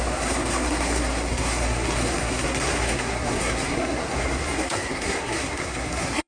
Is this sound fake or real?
fake